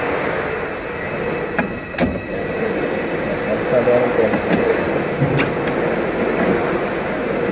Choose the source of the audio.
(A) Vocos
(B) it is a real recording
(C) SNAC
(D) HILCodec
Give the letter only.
B